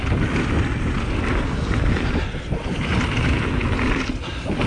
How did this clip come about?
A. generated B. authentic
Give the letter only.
B